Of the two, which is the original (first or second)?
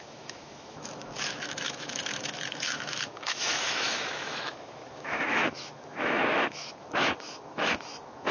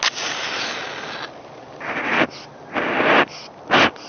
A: second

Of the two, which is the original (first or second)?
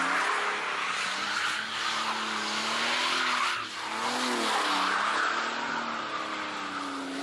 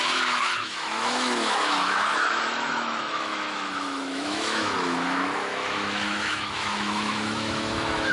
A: first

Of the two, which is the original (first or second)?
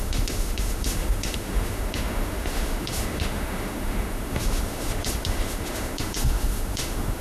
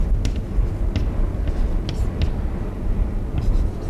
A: second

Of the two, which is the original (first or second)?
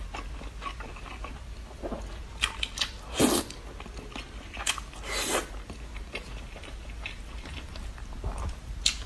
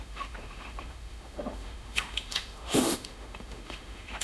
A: first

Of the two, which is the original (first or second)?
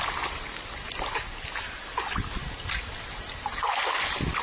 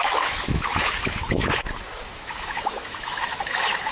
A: first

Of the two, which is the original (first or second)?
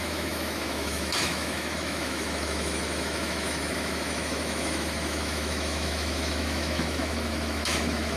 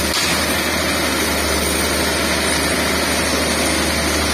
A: second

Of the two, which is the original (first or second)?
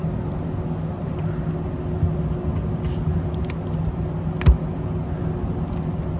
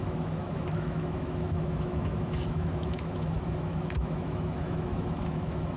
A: first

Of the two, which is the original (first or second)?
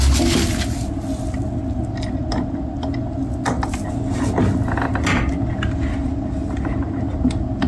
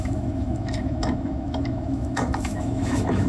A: first